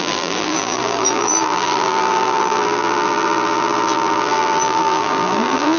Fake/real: fake